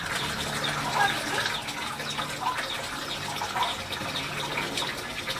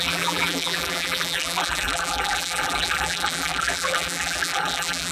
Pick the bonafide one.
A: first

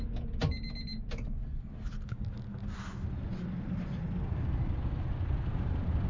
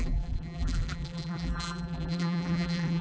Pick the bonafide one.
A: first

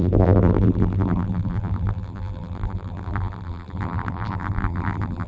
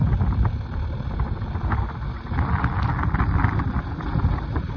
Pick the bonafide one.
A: second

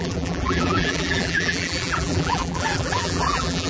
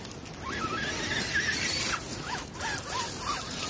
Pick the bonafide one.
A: second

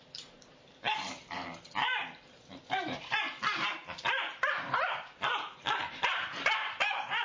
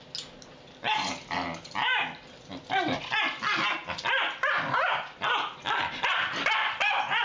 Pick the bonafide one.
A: second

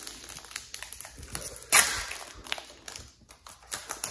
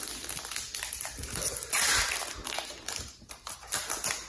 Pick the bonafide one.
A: first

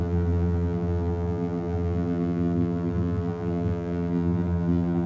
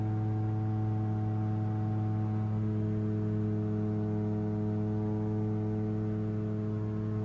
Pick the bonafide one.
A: second